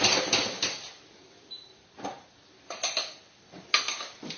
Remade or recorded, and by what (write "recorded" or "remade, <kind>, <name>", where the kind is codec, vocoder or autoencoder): recorded